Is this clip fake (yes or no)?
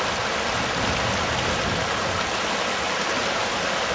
no